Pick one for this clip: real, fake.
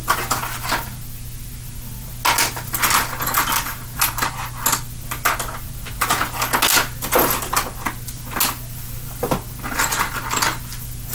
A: real